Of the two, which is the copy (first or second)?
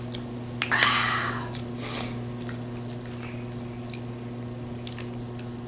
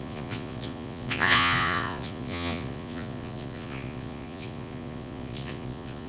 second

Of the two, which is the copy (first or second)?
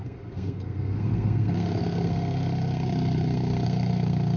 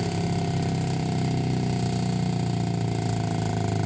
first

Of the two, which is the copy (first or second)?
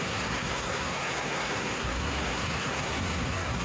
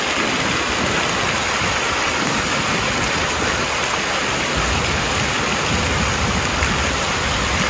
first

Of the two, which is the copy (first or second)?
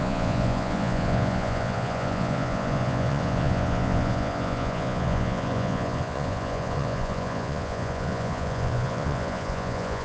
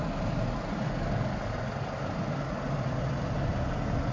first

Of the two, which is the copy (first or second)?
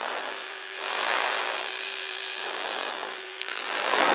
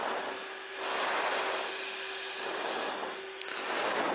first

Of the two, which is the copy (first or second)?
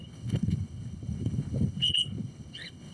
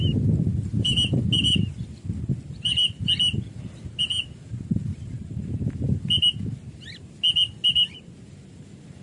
first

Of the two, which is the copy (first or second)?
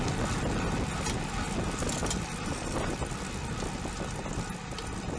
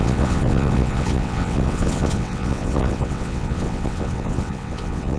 second